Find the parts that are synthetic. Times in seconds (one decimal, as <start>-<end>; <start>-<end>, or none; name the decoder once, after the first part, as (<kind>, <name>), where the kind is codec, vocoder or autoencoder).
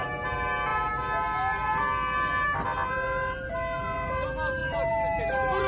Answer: none